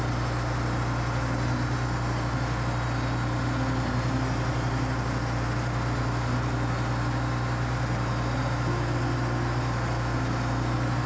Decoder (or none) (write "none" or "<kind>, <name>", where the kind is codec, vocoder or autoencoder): none